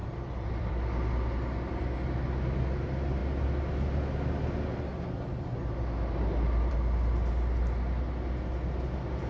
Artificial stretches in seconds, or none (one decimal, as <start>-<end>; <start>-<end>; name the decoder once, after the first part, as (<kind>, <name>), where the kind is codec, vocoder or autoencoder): 0.0-0.7 (vocoder, BigVGAN v2)